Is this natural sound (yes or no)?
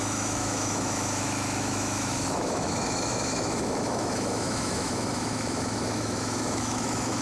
no